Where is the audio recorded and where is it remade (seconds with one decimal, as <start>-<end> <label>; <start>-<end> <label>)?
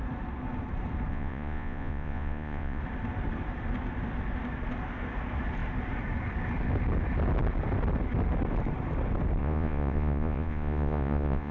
0.0-1.1 recorded; 1.1-2.8 remade; 2.8-9.4 recorded; 9.4-11.5 remade